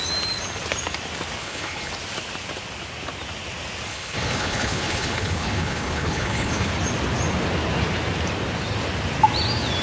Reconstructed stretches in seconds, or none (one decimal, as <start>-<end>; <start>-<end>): 1.4-1.9; 3.9-6.7